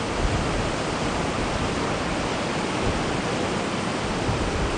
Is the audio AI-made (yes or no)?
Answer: no